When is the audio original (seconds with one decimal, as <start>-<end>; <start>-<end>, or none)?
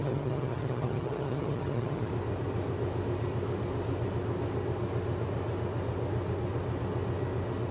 2.1-7.7